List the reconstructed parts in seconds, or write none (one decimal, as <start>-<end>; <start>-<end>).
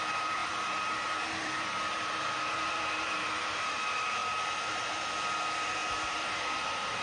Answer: 0.0-7.0